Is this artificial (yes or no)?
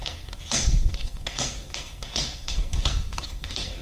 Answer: yes